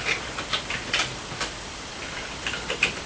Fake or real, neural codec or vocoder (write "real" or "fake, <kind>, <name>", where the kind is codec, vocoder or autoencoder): real